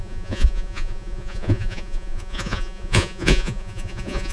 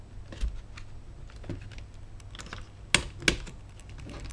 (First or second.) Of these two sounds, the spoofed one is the first